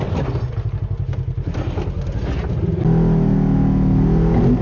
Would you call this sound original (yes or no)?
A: yes